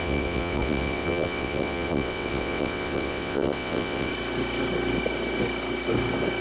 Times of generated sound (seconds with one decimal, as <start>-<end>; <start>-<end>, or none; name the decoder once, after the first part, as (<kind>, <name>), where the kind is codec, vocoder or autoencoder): 0.0-4.1 (vocoder, WaveNeXt)